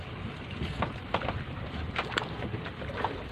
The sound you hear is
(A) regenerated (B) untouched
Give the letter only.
B